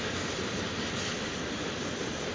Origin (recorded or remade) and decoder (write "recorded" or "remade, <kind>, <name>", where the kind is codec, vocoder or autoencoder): remade, vocoder, BigVGAN v2